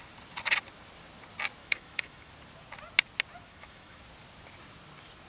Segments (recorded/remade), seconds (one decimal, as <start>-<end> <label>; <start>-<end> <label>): 0.0-1.6 recorded; 1.6-2.3 remade; 2.3-3.5 recorded; 3.5-4.0 remade; 4.0-5.3 recorded